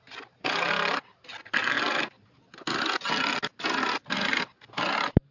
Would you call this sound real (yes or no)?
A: yes